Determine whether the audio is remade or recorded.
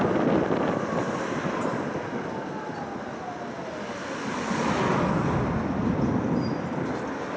recorded